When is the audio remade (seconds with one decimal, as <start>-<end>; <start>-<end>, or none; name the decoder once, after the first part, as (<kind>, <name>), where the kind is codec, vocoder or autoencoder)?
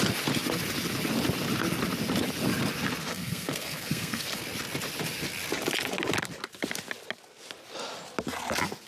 3.0-4.4 (codec, SNAC)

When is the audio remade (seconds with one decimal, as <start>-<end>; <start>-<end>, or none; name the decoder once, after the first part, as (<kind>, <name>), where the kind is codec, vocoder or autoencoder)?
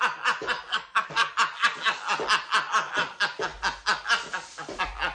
0.7-1.3 (codec, SNAC)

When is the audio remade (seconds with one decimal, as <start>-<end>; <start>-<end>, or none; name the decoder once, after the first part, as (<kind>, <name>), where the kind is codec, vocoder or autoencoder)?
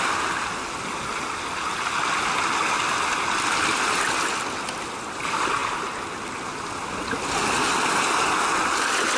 none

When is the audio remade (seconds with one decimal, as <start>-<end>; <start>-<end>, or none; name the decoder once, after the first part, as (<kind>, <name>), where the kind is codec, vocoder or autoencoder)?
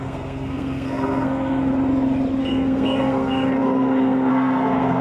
0.0-1.7 (codec, SNAC); 2.4-5.0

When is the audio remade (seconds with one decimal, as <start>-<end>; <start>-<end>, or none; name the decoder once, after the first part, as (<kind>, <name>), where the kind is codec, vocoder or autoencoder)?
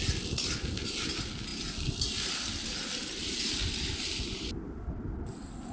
none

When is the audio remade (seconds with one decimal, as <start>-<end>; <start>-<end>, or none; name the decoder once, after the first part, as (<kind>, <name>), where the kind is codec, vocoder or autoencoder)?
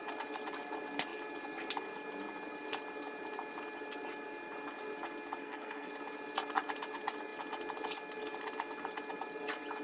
5.4-5.9 (codec, SNAC)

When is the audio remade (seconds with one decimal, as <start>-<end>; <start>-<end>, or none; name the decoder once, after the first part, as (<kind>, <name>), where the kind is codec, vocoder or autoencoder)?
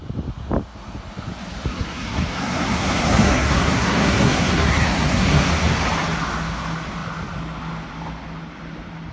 1.7-5.5 (codec, SNAC)